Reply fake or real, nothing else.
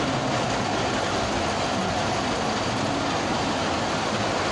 real